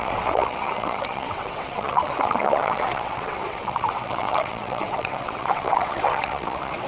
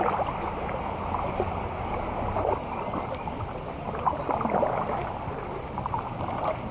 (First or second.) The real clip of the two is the second